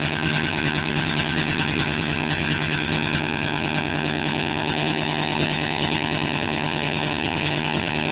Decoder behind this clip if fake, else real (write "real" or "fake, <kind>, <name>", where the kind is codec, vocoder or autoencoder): fake, vocoder, HiFi-GAN